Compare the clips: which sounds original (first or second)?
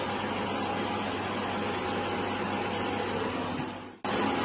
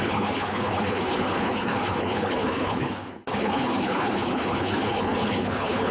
first